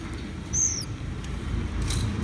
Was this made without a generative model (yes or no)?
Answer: no